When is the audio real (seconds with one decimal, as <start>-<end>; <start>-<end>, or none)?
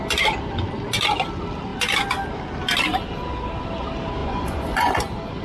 0.0-4.2; 4.9-5.4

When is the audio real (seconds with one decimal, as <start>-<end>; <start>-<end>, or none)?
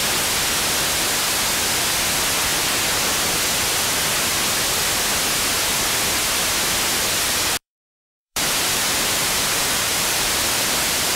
0.0-7.6